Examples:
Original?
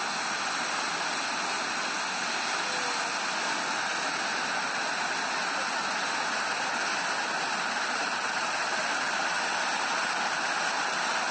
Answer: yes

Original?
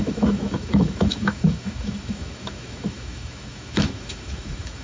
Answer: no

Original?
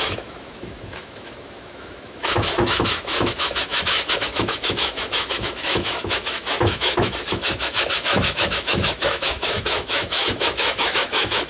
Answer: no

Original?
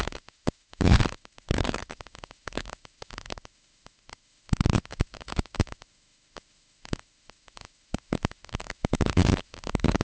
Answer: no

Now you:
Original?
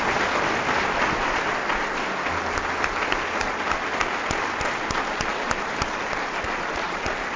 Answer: yes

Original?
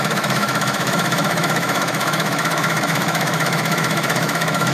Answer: no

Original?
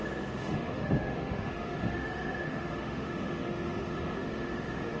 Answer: no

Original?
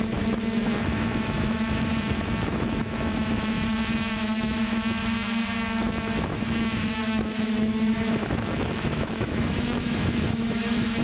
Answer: no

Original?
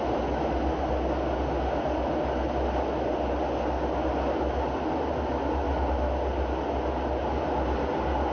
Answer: yes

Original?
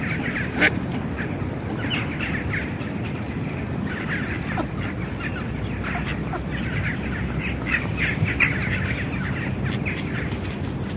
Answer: yes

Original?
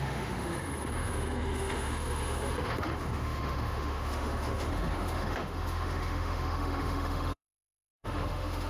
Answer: no